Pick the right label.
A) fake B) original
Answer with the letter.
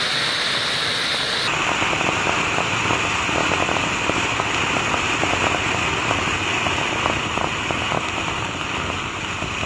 B